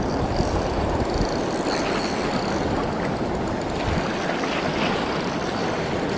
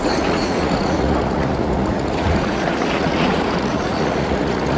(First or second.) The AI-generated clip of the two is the second